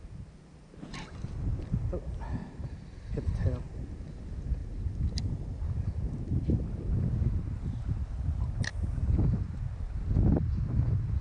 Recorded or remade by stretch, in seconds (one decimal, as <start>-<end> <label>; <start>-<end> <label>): 0.0-11.2 recorded